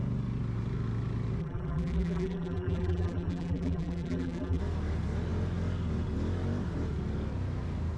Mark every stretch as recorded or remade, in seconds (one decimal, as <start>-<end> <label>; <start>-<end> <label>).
0.0-1.4 recorded; 1.4-4.6 remade; 4.6-8.0 recorded